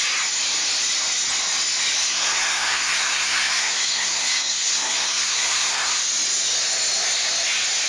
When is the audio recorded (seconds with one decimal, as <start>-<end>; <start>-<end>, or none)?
0.0-2.0; 6.0-7.9